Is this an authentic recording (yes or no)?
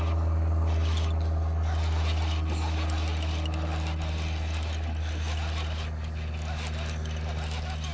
yes